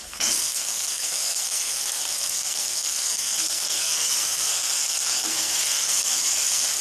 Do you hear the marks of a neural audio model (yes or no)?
yes